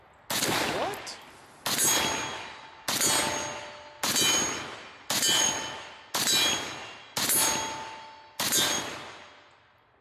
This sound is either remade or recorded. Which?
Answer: recorded